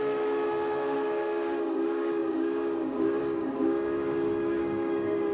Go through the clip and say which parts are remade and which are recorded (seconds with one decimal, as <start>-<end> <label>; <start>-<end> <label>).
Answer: 0.0-5.3 remade